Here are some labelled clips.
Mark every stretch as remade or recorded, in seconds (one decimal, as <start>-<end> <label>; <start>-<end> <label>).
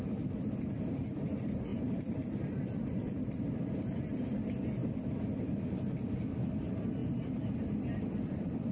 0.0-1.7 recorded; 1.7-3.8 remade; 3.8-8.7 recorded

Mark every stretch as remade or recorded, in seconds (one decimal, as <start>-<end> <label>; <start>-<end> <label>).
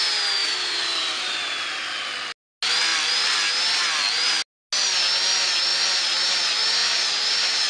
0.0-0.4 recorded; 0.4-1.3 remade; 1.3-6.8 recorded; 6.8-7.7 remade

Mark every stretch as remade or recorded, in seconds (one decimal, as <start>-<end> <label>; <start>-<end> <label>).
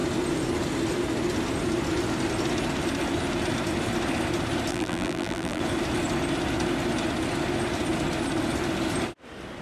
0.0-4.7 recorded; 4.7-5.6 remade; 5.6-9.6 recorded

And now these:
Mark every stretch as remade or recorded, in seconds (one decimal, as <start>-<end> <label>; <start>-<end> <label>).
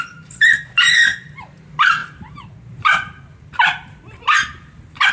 0.0-5.1 remade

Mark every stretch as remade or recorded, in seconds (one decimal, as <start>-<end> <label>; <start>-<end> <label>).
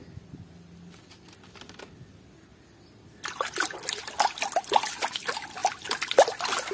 0.0-6.7 recorded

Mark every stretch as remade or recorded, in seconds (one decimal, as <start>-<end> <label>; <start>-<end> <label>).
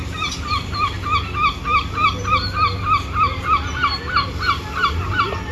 0.0-5.5 recorded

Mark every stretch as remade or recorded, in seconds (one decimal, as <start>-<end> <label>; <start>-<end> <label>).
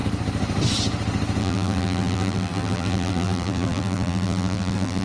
0.0-1.4 recorded; 1.4-5.0 remade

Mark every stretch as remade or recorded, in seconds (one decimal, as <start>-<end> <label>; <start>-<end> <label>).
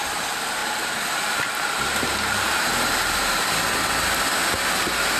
0.0-0.6 recorded; 0.6-3.4 remade; 3.4-5.2 recorded